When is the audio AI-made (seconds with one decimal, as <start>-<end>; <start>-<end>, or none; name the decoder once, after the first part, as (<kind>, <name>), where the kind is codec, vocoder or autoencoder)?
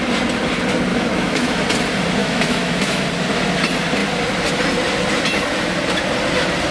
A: 0.9-1.6 (autoencoder, DAC-VAE); 2.2-3.0